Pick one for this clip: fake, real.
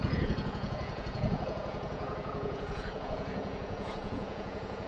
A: fake